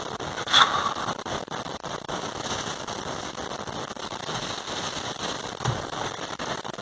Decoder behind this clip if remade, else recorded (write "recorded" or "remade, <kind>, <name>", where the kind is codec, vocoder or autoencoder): recorded